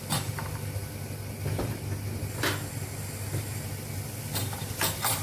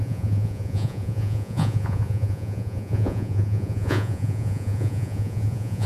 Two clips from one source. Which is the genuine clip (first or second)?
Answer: first